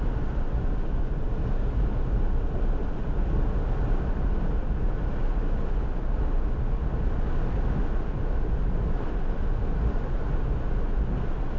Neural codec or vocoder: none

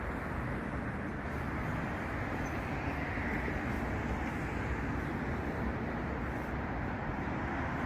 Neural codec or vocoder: none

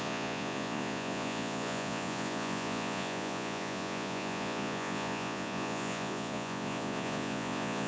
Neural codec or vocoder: vocoder, Vocos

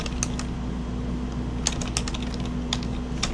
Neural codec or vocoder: none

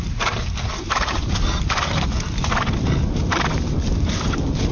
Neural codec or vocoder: none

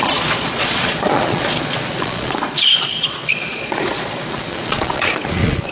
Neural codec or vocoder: vocoder, Vocos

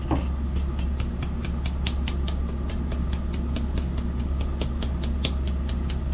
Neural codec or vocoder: none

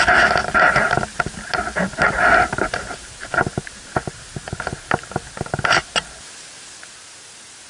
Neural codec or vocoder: none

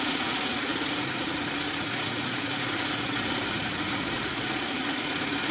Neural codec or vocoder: vocoder, Vocos